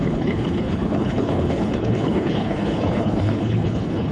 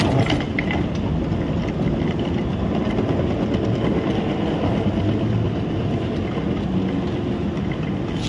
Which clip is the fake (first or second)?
first